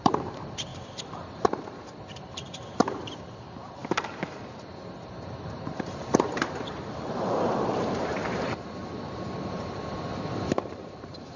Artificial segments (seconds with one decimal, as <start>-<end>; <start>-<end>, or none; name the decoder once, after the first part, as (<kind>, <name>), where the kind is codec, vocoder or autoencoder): 0.0-3.8 (vocoder, BigVGAN v2); 5.1-11.4